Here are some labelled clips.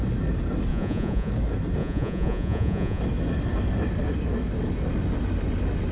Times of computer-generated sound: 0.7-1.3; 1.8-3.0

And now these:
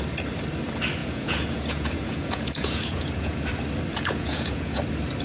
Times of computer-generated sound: 1.0-3.5; 3.9-4.8

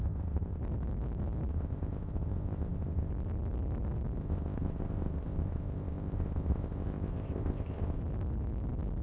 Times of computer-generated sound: 0.0-0.6; 1.5-3.1; 4.2-8.0

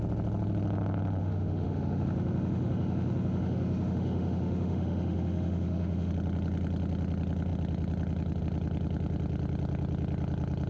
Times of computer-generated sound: 1.2-6.1

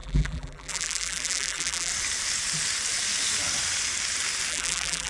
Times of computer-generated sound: 0.0-1.9; 4.5-5.1

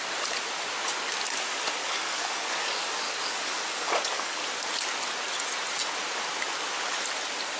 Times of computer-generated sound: 1.8-4.4

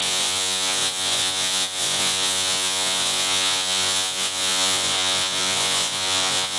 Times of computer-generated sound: 0.0-6.6